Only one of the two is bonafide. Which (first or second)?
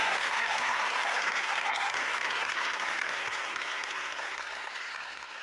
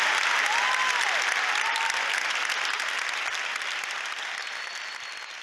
second